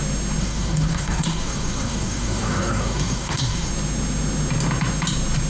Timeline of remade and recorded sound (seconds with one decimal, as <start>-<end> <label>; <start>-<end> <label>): 0.0-0.4 recorded; 0.4-3.7 remade; 3.7-5.5 recorded